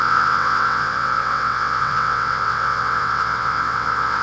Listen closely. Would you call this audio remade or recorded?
remade